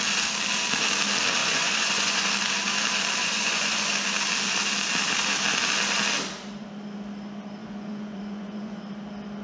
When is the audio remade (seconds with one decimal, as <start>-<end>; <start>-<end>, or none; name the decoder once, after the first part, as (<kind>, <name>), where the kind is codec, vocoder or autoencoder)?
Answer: 1.4-2.3 (vocoder, Vocos); 3.2-3.9; 7.6-8.8